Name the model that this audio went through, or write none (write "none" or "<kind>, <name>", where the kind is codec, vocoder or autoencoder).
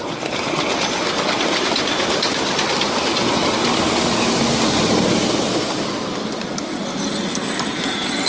none